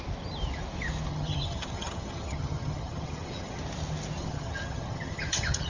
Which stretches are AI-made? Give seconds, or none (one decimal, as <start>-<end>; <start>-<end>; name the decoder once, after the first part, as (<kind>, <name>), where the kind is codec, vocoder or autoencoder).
1.1-3.6 (vocoder, HiFi-GAN); 4.2-5.7